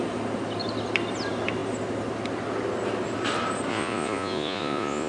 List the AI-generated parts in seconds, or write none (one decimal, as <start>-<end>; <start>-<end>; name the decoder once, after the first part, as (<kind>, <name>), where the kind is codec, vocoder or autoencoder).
3.7-5.1 (vocoder, Vocos)